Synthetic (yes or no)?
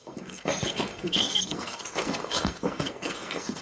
yes